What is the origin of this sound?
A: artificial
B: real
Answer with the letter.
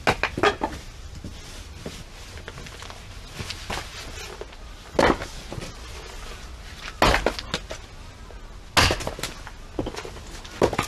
B